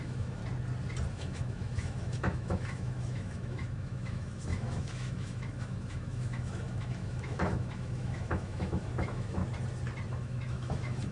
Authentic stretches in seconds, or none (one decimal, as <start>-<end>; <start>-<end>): 0.4-1.1; 9.4-10.1